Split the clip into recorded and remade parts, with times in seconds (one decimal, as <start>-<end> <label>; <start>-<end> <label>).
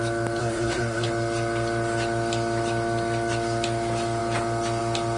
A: 0.0-0.4 recorded; 0.4-1.1 remade; 1.1-5.2 recorded